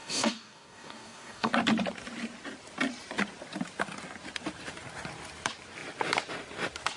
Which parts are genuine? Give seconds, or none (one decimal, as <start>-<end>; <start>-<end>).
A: 1.5-7.0